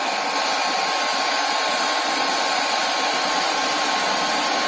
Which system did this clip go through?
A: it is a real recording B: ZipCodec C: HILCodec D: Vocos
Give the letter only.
A